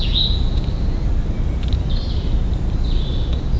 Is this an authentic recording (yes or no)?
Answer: yes